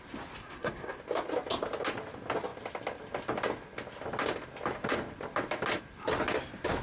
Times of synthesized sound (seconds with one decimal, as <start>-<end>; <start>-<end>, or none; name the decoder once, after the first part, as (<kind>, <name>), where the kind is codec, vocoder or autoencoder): 0.4-1.0 (codec, SNAC)